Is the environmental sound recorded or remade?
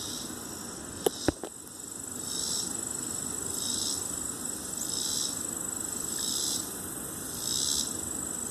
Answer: recorded